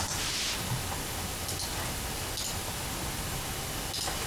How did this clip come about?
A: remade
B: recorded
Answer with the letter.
B